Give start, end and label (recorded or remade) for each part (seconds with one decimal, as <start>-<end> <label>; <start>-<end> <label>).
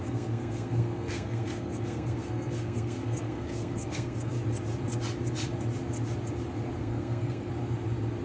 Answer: 0.0-4.3 remade; 4.3-6.8 recorded; 6.8-7.5 remade; 7.5-8.2 recorded